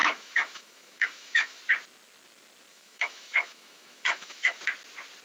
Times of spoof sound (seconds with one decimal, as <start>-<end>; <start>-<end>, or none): 0.0-1.6; 2.7-4.6